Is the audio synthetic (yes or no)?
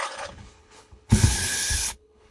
yes